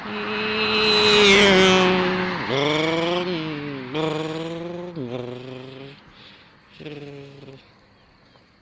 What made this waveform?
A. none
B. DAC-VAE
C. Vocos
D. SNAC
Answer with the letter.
A